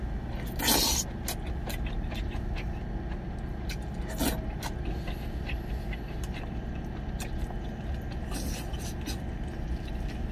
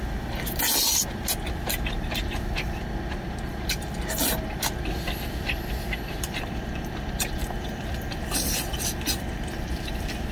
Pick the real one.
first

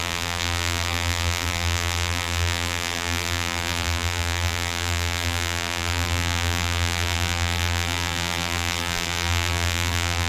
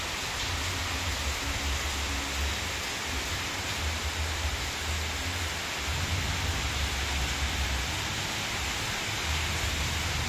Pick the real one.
second